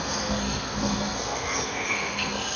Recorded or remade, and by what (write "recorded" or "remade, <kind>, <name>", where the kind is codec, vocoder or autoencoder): remade, codec, SNAC